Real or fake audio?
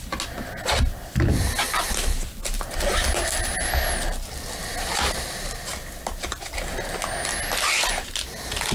real